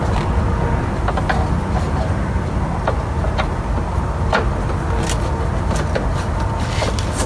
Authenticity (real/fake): real